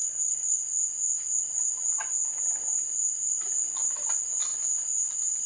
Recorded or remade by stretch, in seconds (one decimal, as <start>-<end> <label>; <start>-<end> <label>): 0.0-0.6 remade; 0.6-5.5 recorded